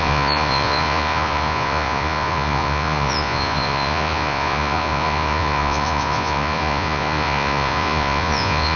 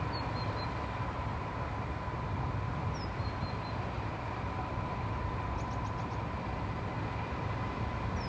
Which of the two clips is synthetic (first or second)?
first